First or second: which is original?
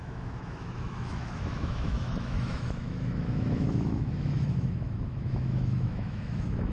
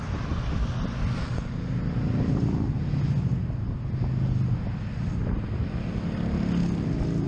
second